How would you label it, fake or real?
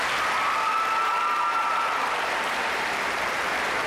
real